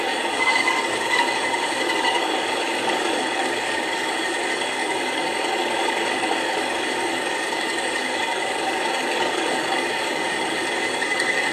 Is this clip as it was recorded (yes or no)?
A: no